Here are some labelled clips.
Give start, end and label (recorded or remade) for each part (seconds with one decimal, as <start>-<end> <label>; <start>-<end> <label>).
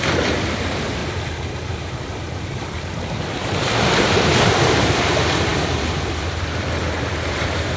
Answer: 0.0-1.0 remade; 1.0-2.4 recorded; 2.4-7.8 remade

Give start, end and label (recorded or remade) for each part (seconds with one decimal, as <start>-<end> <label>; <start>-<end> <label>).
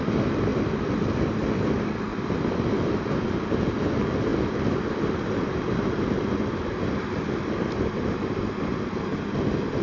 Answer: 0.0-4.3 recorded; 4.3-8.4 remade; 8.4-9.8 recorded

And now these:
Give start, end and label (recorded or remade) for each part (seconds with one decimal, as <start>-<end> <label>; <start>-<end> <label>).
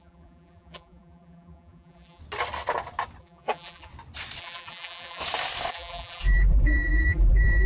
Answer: 0.0-2.2 remade; 2.2-3.2 recorded; 3.2-3.9 remade; 3.9-4.4 recorded; 4.4-5.2 remade; 5.2-5.7 recorded; 5.7-7.7 remade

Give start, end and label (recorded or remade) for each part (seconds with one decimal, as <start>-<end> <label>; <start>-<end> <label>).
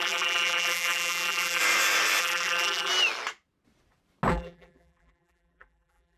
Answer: 0.0-1.6 remade; 1.6-2.2 recorded; 2.2-2.9 remade; 2.9-4.3 recorded; 4.3-6.2 remade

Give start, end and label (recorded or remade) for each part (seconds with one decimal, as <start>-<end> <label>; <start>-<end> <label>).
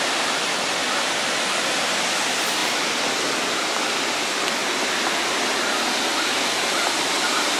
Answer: 0.0-0.8 remade; 0.8-1.8 recorded; 1.8-2.6 remade; 2.6-3.2 recorded; 3.2-4.6 remade; 4.6-7.6 recorded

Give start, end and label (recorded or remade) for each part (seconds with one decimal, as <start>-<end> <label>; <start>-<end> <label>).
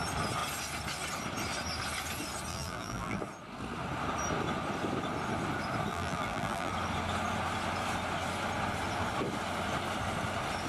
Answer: 0.0-2.5 recorded; 2.5-3.2 remade; 3.2-5.9 recorded; 5.9-6.7 remade; 6.7-10.7 recorded